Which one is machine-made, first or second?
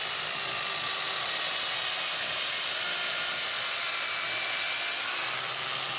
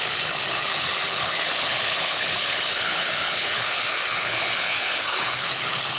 second